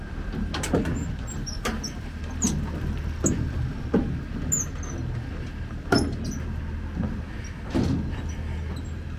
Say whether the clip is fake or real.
real